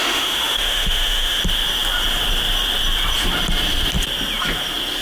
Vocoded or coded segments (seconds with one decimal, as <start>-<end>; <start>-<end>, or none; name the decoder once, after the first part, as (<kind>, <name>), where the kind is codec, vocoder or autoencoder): 0.0-1.4 (autoencoder, DAC-VAE)